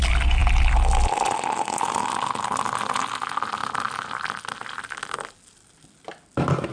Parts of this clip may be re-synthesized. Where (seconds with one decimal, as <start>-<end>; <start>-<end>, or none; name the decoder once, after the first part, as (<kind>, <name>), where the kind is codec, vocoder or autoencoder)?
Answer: none